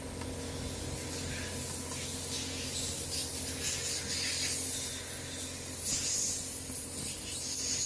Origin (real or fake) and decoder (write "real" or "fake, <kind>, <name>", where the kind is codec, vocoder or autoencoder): real